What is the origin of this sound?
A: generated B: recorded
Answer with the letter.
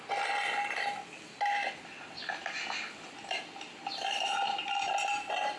B